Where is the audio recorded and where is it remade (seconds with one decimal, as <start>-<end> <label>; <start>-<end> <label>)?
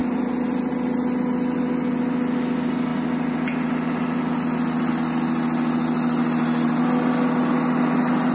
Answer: 0.0-8.3 recorded